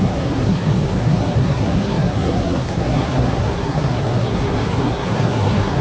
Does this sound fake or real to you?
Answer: fake